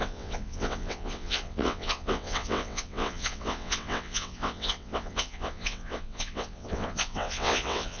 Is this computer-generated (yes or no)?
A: yes